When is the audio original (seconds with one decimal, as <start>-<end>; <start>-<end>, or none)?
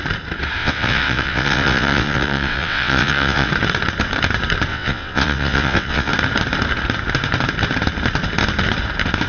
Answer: 0.0-0.6; 3.5-4.7; 6.1-9.3